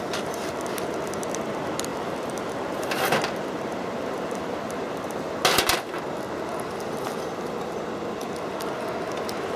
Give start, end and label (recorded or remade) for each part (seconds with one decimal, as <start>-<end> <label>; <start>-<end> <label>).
0.0-1.9 recorded; 1.9-5.2 remade; 5.2-9.6 recorded